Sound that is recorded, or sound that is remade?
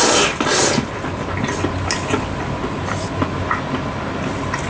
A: recorded